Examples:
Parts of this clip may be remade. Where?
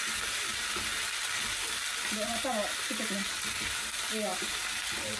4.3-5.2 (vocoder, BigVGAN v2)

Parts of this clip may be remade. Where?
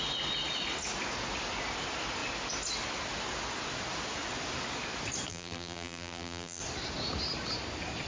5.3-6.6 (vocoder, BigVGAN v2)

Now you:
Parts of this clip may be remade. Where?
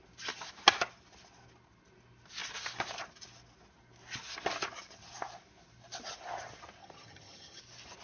6.8-7.6 (vocoder, HiFi-GAN)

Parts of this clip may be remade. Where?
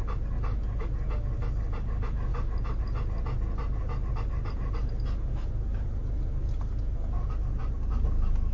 none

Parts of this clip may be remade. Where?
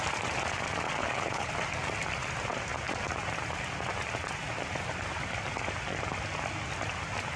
1.0-1.5 (codec, HILCodec)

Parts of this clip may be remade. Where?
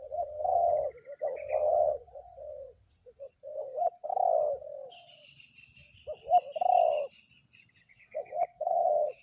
0.0-0.9 (vocoder, WaveNeXt); 1.6-4.1; 7.8-9.2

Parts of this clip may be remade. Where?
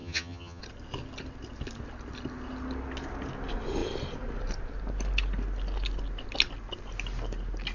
0.0-0.6 (vocoder, HiFi-GAN)